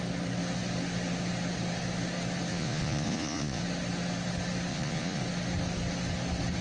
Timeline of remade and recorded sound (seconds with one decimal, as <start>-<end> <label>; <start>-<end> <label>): 0.0-2.5 recorded; 2.5-3.6 remade; 3.6-4.7 recorded; 4.7-5.2 remade; 5.2-6.6 recorded